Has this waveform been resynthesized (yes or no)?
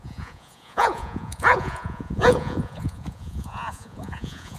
yes